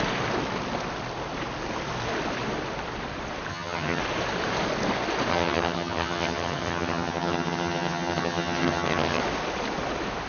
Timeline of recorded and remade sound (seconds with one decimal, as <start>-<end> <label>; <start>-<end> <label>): 0.0-3.5 recorded; 3.5-4.0 remade; 4.0-5.3 recorded; 5.3-9.2 remade; 9.2-10.3 recorded